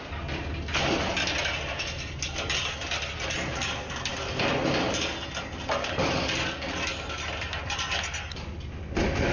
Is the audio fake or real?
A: real